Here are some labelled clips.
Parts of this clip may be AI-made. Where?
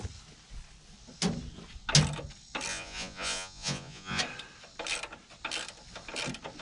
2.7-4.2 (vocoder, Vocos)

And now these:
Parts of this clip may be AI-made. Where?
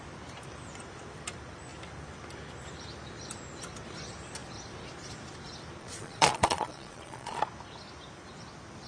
5.8-7.4 (vocoder, Vocos)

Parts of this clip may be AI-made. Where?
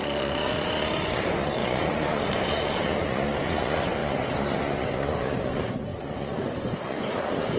0.0-7.6 (vocoder, Vocos)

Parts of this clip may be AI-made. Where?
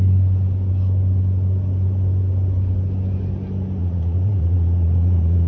3.8-5.5 (vocoder, Vocos)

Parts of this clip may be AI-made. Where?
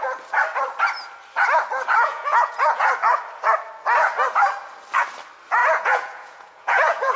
2.1-2.9 (vocoder, Vocos); 5.6-7.2